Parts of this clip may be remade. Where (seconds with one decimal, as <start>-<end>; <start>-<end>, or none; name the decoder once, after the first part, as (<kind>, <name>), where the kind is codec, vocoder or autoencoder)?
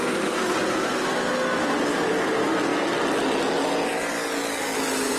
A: none